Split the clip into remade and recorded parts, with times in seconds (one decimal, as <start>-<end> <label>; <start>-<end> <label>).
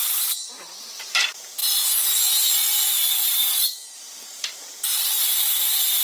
0.0-1.6 remade; 1.6-2.9 recorded; 2.9-6.0 remade